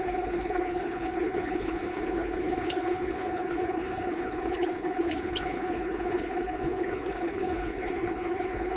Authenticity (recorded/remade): remade